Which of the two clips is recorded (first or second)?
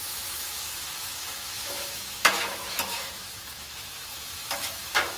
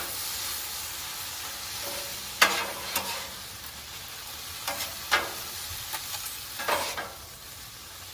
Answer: second